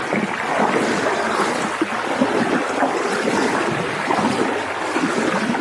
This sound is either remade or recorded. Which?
recorded